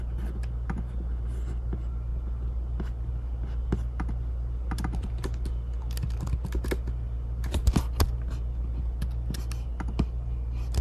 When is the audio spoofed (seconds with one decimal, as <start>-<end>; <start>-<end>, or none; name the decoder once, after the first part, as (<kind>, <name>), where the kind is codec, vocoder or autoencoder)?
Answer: none